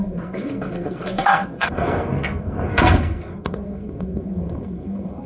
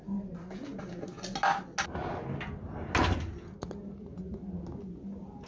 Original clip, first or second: second